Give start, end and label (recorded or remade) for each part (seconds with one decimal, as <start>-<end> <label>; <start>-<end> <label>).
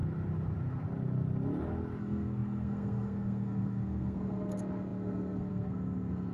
0.0-2.0 recorded; 2.0-6.3 remade